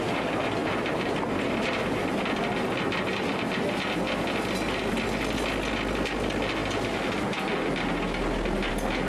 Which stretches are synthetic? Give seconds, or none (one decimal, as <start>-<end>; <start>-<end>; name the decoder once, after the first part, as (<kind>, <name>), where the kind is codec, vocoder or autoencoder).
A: none